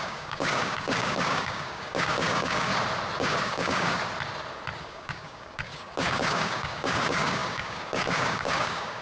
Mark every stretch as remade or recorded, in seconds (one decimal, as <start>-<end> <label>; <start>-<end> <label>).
0.0-2.7 remade; 2.7-3.2 recorded; 3.2-4.0 remade; 4.0-4.8 recorded; 4.8-9.0 remade